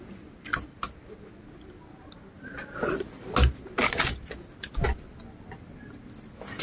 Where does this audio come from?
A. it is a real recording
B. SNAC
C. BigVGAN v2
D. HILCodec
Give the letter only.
A